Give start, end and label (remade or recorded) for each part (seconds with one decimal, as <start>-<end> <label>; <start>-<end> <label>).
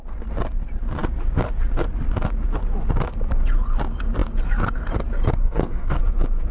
0.0-5.4 recorded; 5.4-6.0 remade; 6.0-6.5 recorded